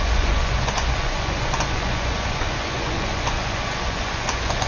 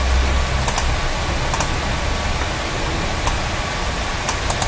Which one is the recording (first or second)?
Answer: second